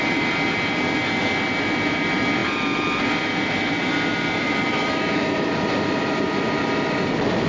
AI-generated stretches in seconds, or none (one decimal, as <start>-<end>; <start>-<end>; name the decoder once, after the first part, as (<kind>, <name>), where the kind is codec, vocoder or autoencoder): 2.4-3.2 (vocoder, BigVGAN v2); 4.1-6.5